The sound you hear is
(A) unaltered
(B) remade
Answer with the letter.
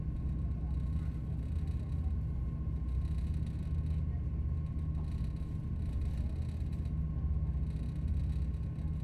A